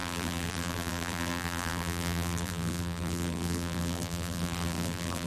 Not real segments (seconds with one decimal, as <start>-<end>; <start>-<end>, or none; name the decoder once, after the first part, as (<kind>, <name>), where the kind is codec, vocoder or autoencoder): 0.0-5.3 (vocoder, BigVGAN v2)